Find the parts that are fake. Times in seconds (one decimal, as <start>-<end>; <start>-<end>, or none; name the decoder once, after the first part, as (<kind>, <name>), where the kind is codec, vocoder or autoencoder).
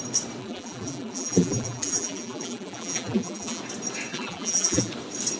0.4-3.6 (vocoder, BigVGAN v2); 4.1-4.9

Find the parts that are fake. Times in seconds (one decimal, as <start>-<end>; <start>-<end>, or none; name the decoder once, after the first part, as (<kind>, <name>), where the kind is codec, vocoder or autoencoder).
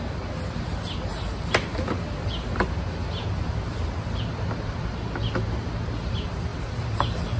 4.3-4.9 (vocoder, BigVGAN v2); 6.5-7.4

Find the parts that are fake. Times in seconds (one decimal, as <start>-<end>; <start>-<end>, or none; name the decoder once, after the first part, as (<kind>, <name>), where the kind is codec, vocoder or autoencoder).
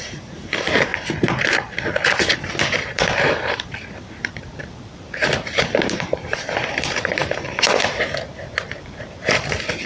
0.0-0.9 (vocoder, BigVGAN v2); 2.8-9.9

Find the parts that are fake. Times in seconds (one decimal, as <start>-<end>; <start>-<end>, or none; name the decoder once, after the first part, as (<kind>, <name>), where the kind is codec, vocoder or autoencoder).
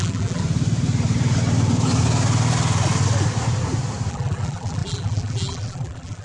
0.0-0.4 (vocoder, BigVGAN v2); 4.1-6.2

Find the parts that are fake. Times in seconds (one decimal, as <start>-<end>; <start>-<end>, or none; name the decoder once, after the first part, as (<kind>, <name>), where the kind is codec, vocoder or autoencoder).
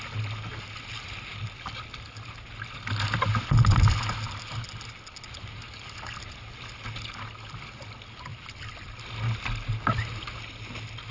8.3-9.0 (vocoder, BigVGAN v2)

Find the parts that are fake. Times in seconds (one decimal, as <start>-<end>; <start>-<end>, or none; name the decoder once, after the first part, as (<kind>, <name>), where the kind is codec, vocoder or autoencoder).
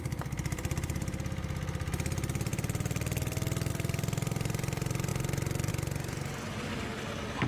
0.0-5.1 (vocoder, BigVGAN v2); 5.7-7.5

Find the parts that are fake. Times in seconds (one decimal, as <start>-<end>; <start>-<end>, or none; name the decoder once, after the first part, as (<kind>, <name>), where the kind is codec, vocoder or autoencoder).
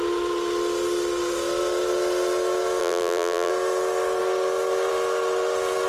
2.8-3.5 (vocoder, BigVGAN v2)